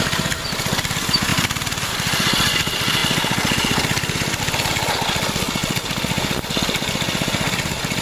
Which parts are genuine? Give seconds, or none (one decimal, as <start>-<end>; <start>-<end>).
0.0-1.3; 1.9-8.0

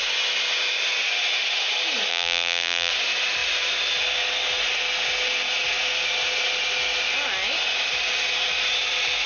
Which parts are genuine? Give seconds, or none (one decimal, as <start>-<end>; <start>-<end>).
0.0-2.1; 2.9-9.3

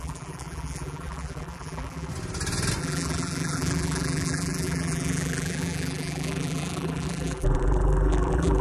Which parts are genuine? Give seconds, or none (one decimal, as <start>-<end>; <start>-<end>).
2.1-2.8